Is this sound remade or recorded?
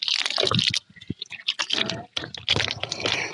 recorded